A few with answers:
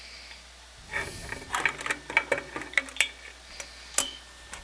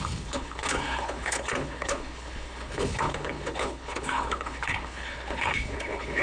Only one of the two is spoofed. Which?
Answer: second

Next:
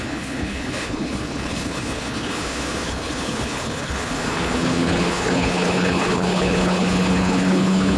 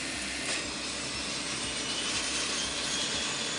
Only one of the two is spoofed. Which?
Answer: first